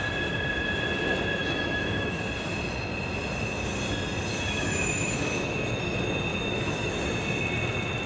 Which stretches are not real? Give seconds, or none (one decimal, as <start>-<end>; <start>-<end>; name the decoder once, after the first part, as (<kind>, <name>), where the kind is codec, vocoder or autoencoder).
1.4-2.2 (autoencoder, DAC-VAE); 4.3-5.8; 6.3-6.9